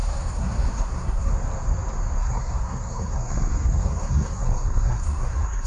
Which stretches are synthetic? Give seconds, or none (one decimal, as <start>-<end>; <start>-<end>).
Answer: 0.0-1.3; 2.2-5.7